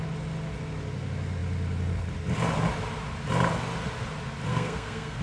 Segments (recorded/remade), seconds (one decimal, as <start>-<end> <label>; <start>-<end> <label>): 0.0-4.5 recorded; 4.5-5.2 remade